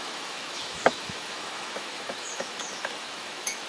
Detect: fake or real fake